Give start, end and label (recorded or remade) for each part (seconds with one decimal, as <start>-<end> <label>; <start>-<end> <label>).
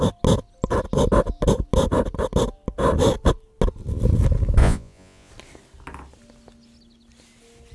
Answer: 0.0-4.6 recorded; 4.6-5.3 remade; 5.3-7.7 recorded